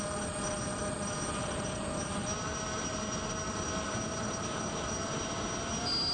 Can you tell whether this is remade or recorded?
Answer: recorded